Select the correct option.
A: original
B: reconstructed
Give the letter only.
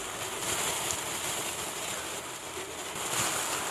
A